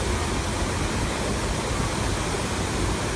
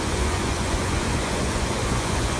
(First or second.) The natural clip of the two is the first